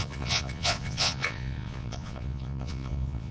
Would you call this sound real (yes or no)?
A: no